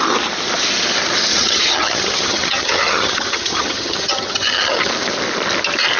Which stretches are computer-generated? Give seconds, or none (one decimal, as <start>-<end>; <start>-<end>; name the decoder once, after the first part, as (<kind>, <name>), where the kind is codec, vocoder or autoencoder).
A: 1.3-4.9 (vocoder, HiFi-GAN)